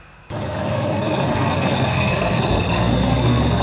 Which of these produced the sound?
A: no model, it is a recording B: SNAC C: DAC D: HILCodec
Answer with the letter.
B